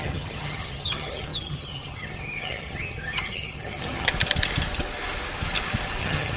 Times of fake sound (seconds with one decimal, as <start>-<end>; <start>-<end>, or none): 0.0-4.1; 6.0-6.4